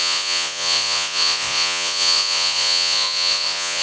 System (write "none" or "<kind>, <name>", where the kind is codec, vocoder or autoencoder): vocoder, Vocos